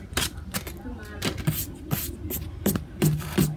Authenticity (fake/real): real